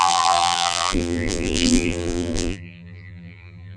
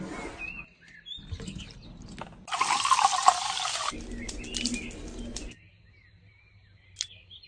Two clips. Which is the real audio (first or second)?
second